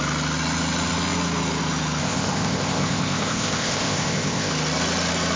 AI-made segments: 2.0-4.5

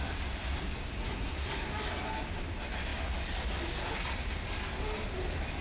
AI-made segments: 1.0-1.7

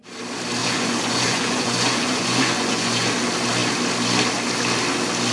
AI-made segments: 0.6-3.1

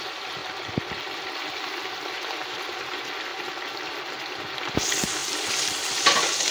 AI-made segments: none

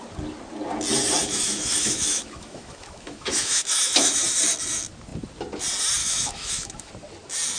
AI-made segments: 1.2-4.2; 6.0-6.9

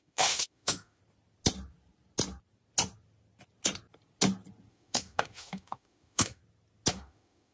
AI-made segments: 0.0-1.0; 4.7-6.4; 6.9-7.5

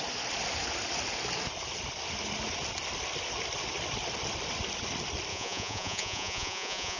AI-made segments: 5.3-7.0

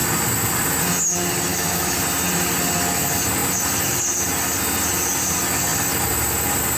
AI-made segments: 1.5-2.0